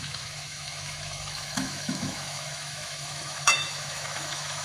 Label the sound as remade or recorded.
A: remade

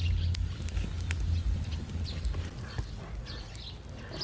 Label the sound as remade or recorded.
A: recorded